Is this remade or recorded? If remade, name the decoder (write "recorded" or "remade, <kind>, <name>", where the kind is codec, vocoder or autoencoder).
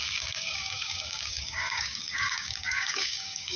remade, codec, DAC